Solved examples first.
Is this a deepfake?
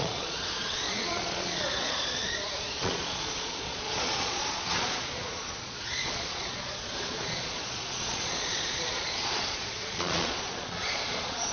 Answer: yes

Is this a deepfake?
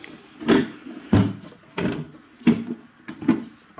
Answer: no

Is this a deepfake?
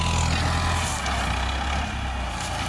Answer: no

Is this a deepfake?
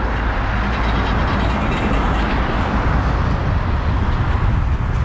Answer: no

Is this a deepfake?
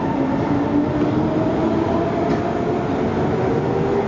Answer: no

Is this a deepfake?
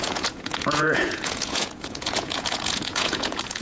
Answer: yes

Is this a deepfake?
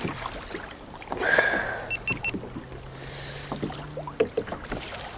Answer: no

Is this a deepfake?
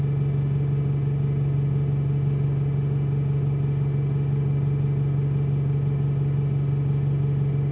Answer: no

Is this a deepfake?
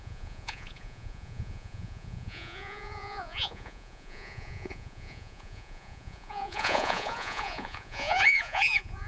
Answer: yes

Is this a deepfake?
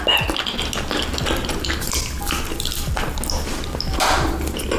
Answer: no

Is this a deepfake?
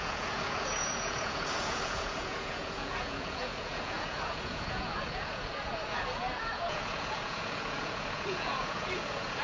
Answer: yes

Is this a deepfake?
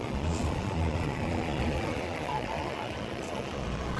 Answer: yes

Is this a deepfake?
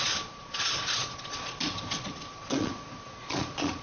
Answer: yes